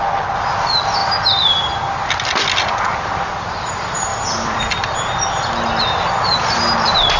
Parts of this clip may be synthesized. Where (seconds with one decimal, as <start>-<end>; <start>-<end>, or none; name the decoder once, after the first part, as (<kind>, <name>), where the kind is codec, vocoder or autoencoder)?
4.1-4.7 (vocoder, BigVGAN v2)